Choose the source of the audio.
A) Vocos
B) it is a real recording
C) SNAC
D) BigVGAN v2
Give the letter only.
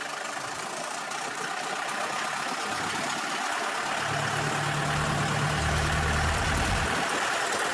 B